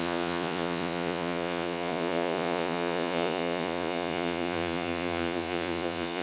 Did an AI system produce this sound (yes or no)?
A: yes